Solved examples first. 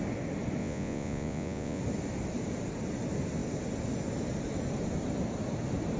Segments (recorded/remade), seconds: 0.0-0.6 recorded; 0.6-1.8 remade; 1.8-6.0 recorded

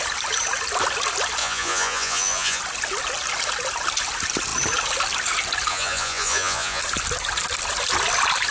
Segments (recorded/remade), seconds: 0.0-1.4 recorded; 1.4-2.6 remade; 2.6-5.7 recorded; 5.7-6.8 remade; 6.8-8.5 recorded

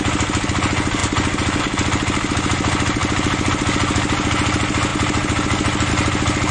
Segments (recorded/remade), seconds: 0.0-3.0 recorded; 3.0-3.5 remade; 3.5-6.5 recorded

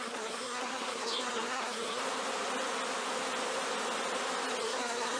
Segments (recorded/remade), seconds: 0.0-2.0 remade; 2.0-4.6 recorded; 4.6-5.2 remade

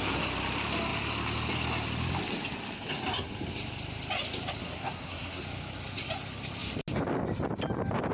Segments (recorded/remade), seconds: 0.0-4.6 recorded; 4.6-5.4 remade; 5.4-8.1 recorded

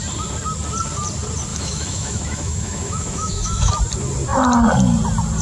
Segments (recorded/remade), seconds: 0.0-1.5 recorded; 1.5-3.7 remade; 3.7-5.4 recorded